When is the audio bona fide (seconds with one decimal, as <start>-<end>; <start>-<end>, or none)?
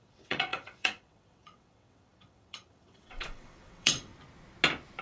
4.1-5.0